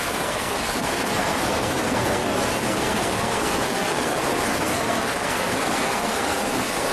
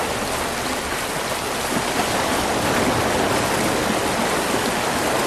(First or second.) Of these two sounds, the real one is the second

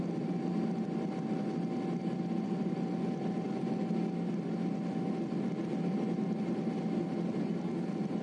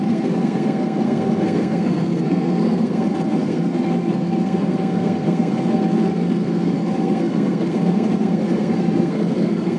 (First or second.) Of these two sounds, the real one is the first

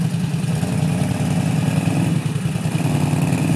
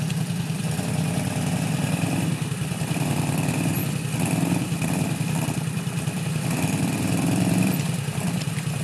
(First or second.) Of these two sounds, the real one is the first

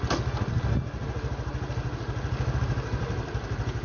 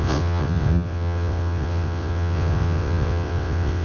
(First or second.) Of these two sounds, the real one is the first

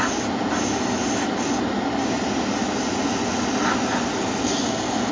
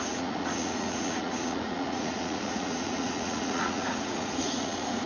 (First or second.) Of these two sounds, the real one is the first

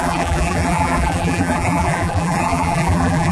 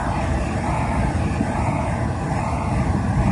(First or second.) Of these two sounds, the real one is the second